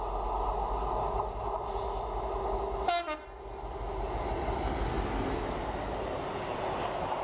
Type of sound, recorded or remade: recorded